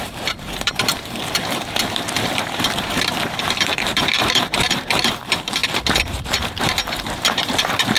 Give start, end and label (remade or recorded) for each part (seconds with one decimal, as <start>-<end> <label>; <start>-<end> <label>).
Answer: 0.0-8.0 remade